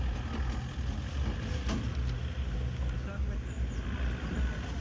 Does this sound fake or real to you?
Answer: real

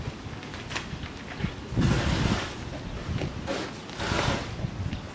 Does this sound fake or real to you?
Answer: real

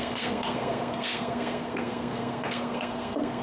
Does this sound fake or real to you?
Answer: fake